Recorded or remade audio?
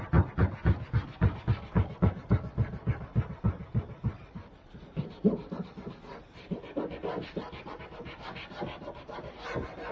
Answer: recorded